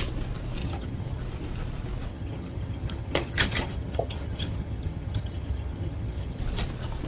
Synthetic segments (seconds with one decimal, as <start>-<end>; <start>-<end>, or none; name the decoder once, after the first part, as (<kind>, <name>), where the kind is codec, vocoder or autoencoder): 0.6-1.2 (vocoder, HiFi-GAN); 2.1-6.4